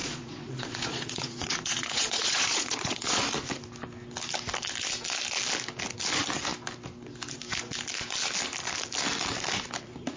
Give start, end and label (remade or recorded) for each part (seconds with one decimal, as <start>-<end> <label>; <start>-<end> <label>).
0.0-3.2 remade; 3.2-10.2 recorded